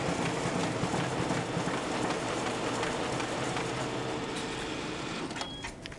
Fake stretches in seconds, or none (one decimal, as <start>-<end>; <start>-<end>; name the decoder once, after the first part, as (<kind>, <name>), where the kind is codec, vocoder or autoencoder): none

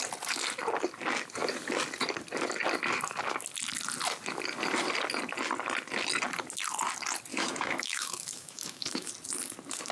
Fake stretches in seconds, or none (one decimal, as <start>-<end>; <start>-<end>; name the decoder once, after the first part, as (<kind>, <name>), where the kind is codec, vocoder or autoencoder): 7.3-9.1 (autoencoder, DAC-VAE)

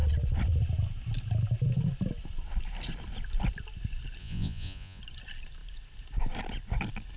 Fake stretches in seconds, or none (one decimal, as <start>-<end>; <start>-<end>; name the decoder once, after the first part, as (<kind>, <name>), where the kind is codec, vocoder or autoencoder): 4.2-5.0 (vocoder, Vocos)

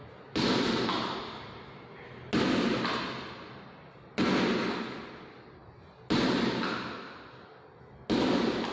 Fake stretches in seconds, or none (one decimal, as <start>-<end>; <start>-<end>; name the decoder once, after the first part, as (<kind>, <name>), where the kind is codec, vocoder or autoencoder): none